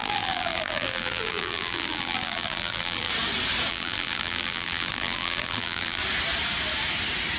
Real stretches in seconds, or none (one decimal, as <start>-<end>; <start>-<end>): 3.1-3.7; 6.0-7.4